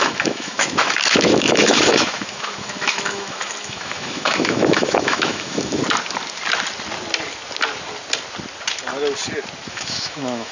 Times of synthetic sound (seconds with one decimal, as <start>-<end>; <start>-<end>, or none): 0.0-5.8; 9.7-10.5